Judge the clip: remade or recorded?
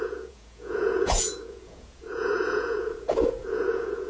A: remade